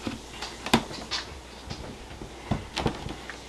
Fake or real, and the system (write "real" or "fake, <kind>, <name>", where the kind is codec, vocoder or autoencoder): real